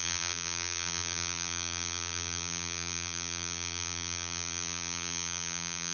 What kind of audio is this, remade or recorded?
remade